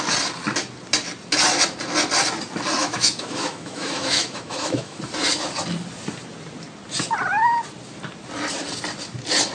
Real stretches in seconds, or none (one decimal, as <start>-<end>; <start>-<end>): 0.0-2.8; 5.0-9.5